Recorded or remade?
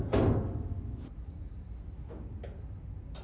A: recorded